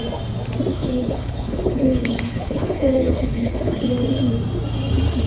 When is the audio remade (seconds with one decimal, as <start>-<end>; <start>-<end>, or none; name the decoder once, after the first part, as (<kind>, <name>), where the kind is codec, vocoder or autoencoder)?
0.7-3.9 (codec, HILCodec)